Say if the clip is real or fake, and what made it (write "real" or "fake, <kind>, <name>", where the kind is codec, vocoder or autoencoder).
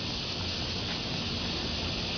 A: real